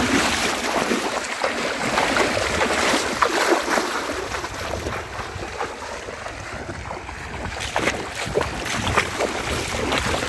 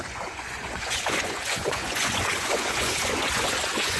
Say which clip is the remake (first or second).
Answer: second